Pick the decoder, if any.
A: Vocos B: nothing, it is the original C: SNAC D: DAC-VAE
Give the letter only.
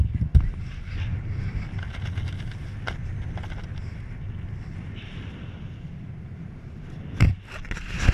B